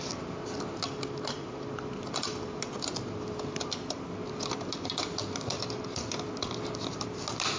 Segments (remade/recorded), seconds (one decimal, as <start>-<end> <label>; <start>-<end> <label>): 0.0-7.6 recorded